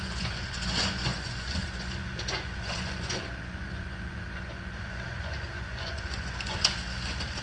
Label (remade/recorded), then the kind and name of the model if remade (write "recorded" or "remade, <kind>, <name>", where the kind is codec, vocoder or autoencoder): remade, vocoder, Vocos